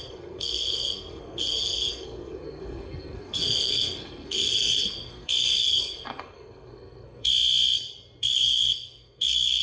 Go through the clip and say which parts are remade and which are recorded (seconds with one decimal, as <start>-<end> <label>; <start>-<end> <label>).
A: 0.0-7.3 remade; 7.3-8.2 recorded; 8.2-9.6 remade